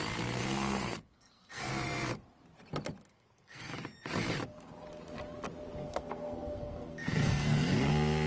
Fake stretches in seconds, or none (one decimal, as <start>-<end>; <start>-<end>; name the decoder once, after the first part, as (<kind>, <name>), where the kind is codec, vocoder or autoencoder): 0.4-1.7 (codec, SNAC); 3.1-3.7; 5.8-7.9